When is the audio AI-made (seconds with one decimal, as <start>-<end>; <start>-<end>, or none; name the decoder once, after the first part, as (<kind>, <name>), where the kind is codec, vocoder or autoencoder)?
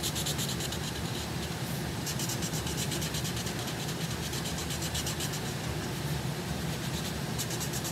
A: none